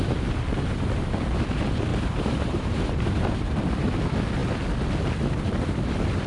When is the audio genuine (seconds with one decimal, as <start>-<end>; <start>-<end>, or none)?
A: 0.0-1.9; 3.3-6.3